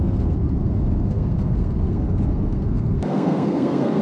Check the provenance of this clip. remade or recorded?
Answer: remade